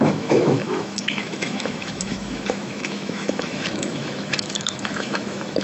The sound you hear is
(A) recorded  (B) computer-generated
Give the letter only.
B